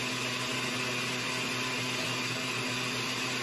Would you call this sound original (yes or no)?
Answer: yes